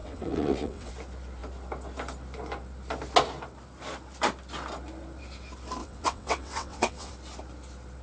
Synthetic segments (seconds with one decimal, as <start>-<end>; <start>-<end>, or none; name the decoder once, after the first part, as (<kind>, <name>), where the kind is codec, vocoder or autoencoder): 0.0-0.9 (vocoder, WaveNeXt); 5.8-7.1